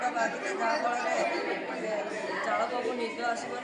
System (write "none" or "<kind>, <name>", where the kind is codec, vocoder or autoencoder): vocoder, BigVGAN v2